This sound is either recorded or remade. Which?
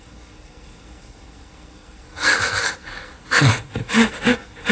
remade